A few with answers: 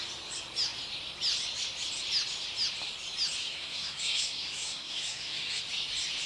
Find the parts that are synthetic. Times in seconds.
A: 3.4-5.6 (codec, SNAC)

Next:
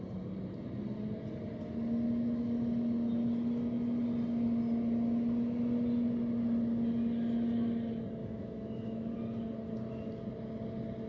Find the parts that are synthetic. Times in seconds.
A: 8.2-9.1 (autoencoder, DAC-VAE)

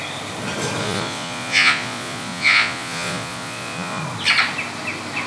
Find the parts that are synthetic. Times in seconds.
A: 0.8-4.0 (vocoder, Vocos)

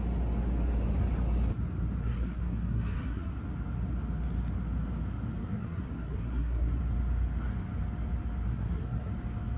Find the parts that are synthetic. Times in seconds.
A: 2.0-3.3 (codec, SNAC); 5.4-6.8; 8.5-9.1